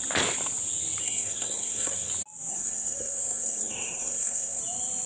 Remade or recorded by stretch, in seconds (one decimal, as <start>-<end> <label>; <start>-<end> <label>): 0.0-1.0 recorded; 1.0-2.1 remade; 2.1-2.5 recorded; 2.5-4.6 remade; 4.6-5.1 recorded